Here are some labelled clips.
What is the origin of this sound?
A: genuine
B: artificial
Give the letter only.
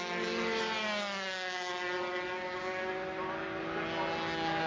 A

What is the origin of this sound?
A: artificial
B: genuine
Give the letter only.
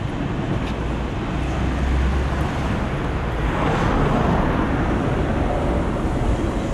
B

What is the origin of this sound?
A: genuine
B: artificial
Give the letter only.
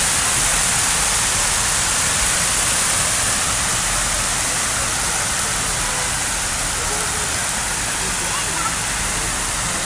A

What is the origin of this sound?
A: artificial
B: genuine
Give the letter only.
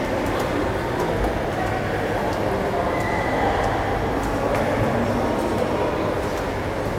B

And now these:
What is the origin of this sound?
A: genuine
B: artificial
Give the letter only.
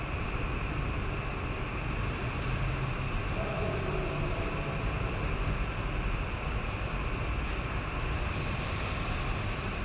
A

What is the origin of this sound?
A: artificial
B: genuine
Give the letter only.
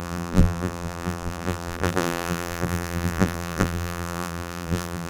A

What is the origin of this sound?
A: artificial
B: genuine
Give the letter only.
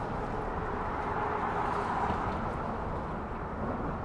B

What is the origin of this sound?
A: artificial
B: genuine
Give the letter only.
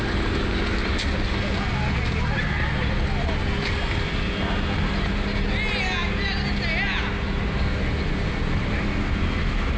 B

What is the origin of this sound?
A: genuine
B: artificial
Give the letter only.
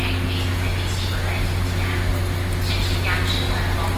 A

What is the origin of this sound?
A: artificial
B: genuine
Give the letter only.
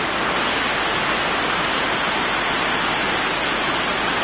B